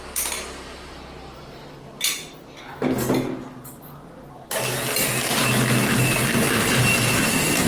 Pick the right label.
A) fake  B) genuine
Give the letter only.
B